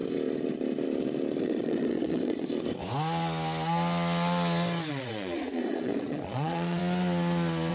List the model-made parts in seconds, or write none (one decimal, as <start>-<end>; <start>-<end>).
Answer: 1.4-2.5; 4.9-6.8